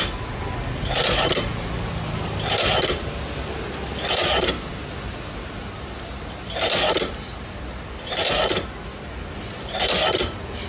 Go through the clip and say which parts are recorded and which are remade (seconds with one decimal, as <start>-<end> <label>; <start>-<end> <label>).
0.0-10.7 recorded